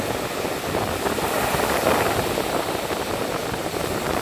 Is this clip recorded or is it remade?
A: recorded